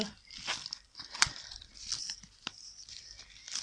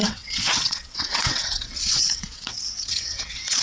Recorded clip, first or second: first